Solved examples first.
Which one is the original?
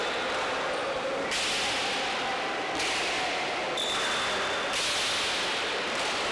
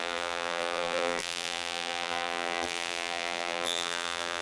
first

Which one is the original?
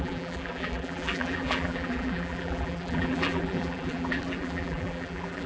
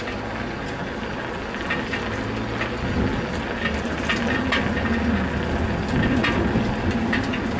second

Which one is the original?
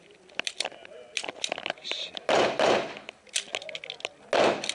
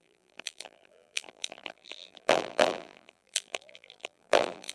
first